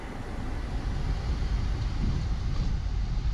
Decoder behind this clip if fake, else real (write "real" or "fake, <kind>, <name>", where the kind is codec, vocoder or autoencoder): real